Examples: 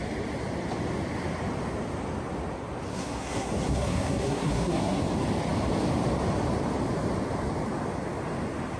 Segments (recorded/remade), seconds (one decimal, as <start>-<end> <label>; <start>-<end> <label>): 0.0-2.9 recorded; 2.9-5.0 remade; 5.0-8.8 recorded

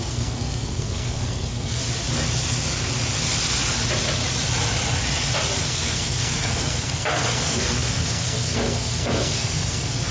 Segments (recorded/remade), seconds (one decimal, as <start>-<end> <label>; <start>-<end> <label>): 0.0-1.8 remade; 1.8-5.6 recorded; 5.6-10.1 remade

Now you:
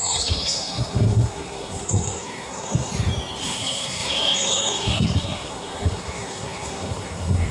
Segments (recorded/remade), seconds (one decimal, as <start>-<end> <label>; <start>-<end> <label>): 0.0-2.9 remade; 2.9-3.4 recorded; 3.4-7.5 remade

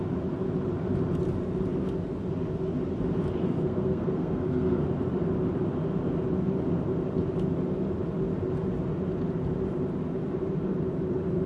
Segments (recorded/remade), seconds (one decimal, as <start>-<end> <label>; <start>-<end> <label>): 0.0-3.4 recorded; 3.4-4.8 remade; 4.8-11.5 recorded

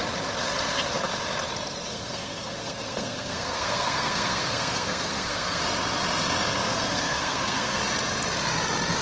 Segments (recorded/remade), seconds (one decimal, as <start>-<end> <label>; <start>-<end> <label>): 0.0-1.9 recorded; 1.9-5.6 remade; 5.6-6.6 recorded; 6.6-7.8 remade; 7.8-9.0 recorded

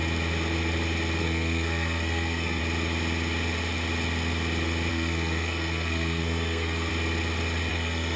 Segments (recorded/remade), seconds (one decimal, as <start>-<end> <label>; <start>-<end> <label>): 0.0-1.2 recorded; 1.2-2.6 remade; 2.6-4.9 recorded; 4.9-6.9 remade; 6.9-7.7 recorded; 7.7-8.2 remade

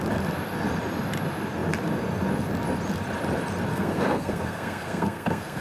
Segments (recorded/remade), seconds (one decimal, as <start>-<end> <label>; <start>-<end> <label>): 0.0-3.7 recorded; 3.7-5.6 remade

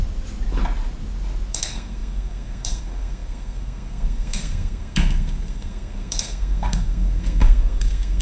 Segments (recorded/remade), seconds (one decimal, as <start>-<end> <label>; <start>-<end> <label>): 0.0-1.5 recorded; 1.5-8.2 remade